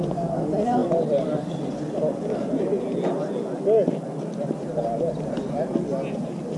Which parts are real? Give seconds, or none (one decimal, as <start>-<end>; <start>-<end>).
0.0-6.6